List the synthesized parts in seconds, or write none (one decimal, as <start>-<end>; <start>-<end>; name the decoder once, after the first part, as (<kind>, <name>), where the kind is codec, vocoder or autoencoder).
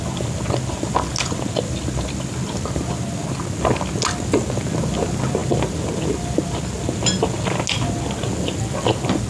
none